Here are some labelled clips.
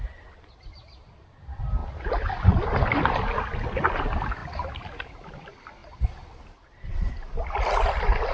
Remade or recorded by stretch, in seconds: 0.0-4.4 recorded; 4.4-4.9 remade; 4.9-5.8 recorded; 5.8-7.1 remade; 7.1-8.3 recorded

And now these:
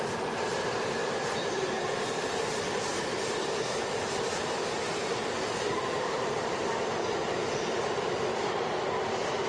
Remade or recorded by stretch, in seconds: 0.0-1.0 recorded; 1.0-3.9 remade; 3.9-5.5 recorded; 5.5-6.6 remade; 6.6-9.5 recorded

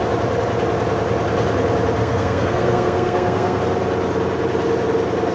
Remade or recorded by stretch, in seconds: 0.0-2.0 recorded; 2.0-3.6 remade; 3.6-5.3 recorded

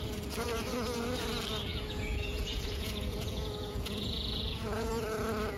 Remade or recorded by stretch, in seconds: 0.0-1.7 recorded; 1.7-4.9 remade; 4.9-5.6 recorded

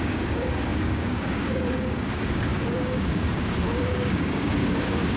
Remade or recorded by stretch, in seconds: 0.0-5.2 remade

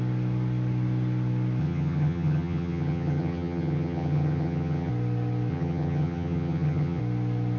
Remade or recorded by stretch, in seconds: 0.0-1.6 recorded; 1.6-4.9 remade; 4.9-5.5 recorded; 5.5-7.0 remade; 7.0-7.6 recorded